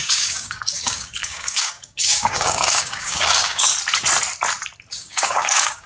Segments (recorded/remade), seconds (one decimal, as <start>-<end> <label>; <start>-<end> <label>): 0.0-3.7 remade; 3.7-4.9 recorded; 4.9-5.9 remade